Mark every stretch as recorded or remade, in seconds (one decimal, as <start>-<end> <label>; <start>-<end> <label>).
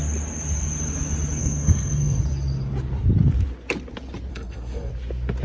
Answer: 0.0-1.4 recorded; 1.4-2.2 remade; 2.2-4.3 recorded; 4.3-4.9 remade; 4.9-5.4 recorded